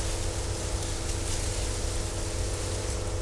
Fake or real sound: real